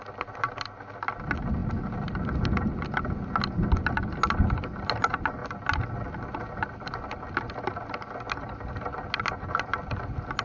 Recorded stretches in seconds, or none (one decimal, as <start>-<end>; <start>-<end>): 0.0-10.4